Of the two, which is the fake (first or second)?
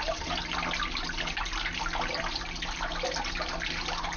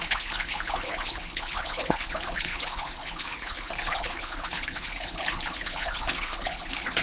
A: second